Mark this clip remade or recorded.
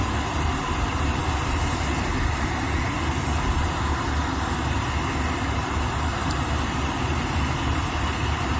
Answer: remade